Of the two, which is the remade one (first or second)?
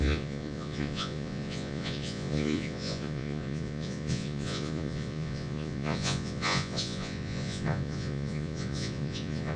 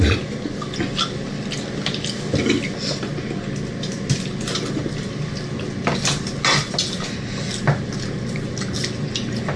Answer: first